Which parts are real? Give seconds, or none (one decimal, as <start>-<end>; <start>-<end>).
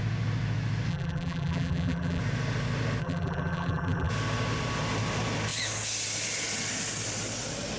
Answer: 0.0-0.9; 2.2-3.0; 4.1-7.8